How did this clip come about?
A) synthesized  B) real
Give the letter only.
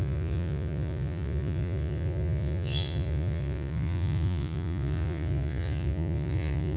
A